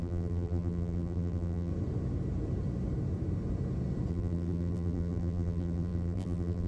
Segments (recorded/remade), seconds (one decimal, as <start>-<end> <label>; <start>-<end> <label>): 0.0-1.7 remade; 1.7-4.1 recorded; 4.1-6.7 remade